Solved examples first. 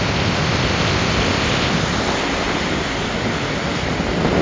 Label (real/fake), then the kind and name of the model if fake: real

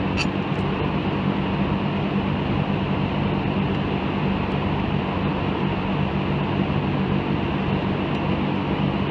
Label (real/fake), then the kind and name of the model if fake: real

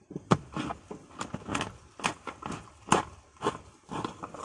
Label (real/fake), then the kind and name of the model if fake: real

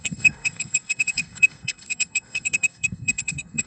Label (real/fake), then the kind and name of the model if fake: fake, codec, SNAC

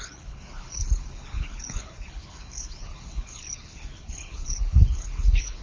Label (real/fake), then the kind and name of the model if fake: fake, codec, HILCodec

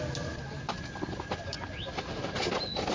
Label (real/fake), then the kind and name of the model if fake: real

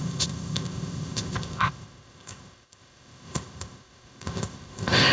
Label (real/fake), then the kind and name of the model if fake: fake, codec, ZipCodec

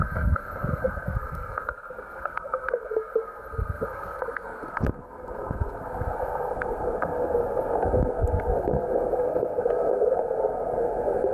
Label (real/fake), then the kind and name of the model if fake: fake, codec, SNAC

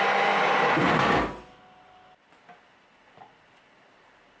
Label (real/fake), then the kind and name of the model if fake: real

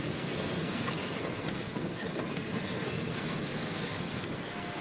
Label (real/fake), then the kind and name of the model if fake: fake, codec, SNAC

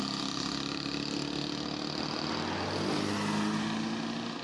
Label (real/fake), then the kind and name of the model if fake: real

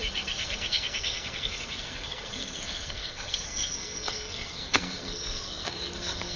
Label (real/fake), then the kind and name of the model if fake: fake, codec, SNAC